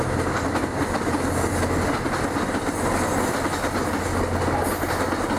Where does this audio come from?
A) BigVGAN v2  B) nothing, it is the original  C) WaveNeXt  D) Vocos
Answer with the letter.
B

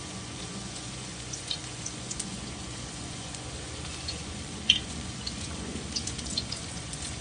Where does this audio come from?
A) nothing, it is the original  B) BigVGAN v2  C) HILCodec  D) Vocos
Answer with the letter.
D